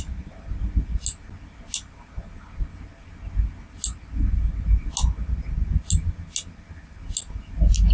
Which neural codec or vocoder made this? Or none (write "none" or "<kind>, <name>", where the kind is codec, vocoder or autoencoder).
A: none